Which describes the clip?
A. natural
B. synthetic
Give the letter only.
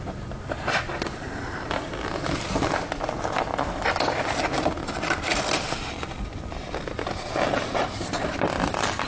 B